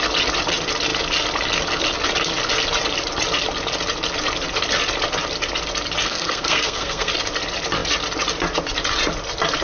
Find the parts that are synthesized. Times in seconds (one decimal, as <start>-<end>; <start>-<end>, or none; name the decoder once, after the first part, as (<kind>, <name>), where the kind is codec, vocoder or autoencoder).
6.0-7.1 (codec, SNAC)